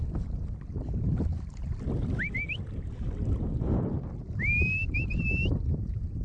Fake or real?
real